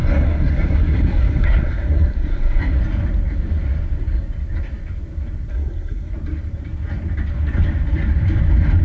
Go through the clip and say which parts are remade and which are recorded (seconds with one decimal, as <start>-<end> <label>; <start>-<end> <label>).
0.0-2.8 remade; 2.8-5.5 recorded; 5.5-6.1 remade; 6.1-8.8 recorded